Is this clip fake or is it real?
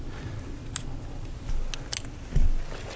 real